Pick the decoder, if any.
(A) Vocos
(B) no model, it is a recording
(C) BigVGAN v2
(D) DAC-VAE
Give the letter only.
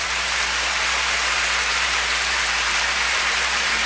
C